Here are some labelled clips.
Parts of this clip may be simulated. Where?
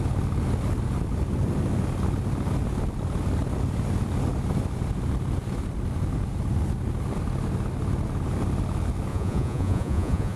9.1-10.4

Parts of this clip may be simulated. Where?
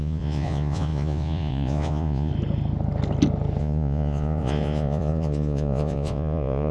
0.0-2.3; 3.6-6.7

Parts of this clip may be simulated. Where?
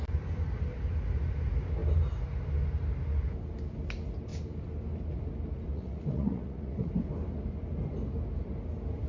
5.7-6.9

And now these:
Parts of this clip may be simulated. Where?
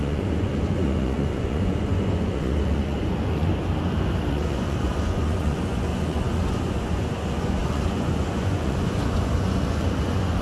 0.0-3.5; 4.3-10.4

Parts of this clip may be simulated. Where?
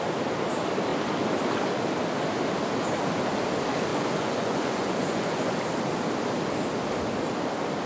3.9-5.5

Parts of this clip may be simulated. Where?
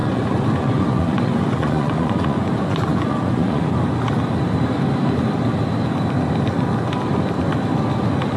0.0-3.7